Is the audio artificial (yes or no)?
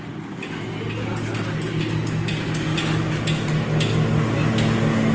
no